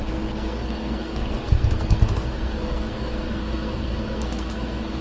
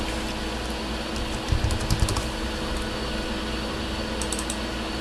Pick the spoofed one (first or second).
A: first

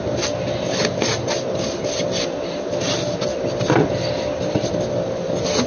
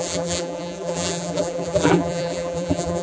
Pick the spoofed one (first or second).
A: second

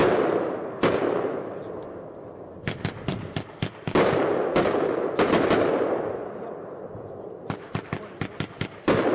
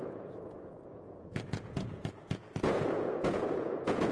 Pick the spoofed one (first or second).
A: second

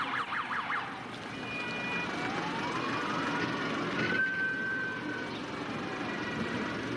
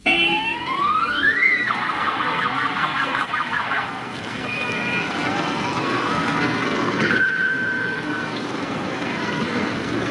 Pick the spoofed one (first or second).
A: second